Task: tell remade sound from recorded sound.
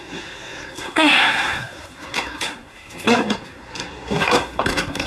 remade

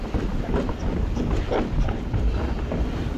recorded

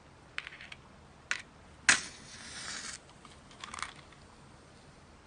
recorded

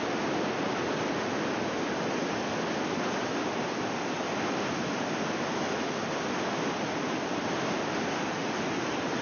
recorded